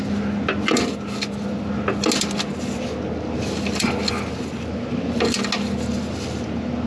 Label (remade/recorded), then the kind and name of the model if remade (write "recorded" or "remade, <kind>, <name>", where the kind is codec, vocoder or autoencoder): recorded